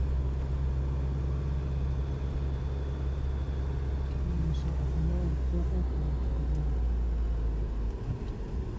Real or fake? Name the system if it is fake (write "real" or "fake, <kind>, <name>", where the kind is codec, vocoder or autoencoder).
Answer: real